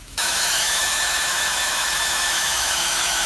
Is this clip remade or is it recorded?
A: remade